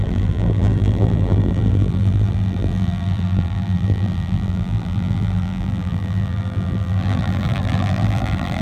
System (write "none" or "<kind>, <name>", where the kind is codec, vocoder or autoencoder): vocoder, BigVGAN v2